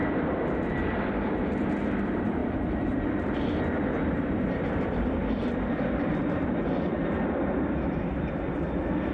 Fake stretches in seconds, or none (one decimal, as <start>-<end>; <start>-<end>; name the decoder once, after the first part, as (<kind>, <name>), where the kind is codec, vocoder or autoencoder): 0.0-9.1 (vocoder, BigVGAN v2)